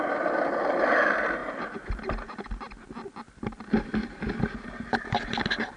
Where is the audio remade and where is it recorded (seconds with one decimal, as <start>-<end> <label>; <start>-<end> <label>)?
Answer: 0.0-5.8 recorded